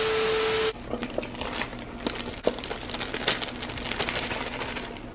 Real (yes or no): yes